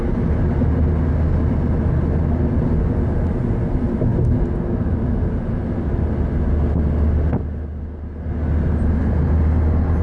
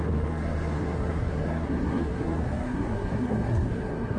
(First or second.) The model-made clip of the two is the second